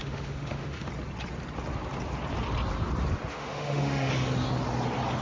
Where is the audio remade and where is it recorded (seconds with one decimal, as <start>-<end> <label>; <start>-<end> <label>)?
0.0-0.9 remade; 0.9-3.3 recorded; 3.3-4.1 remade; 4.1-5.2 recorded